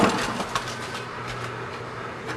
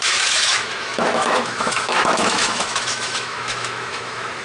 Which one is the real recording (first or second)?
first